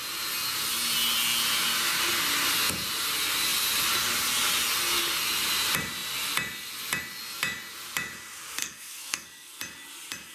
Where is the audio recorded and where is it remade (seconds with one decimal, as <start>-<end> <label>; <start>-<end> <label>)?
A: 0.0-8.6 recorded; 8.6-9.6 remade; 9.6-10.3 recorded